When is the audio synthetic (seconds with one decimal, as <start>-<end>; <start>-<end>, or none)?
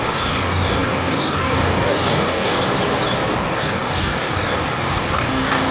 0.0-2.6; 3.3-5.7